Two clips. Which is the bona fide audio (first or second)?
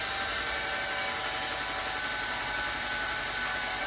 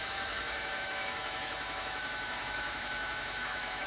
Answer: first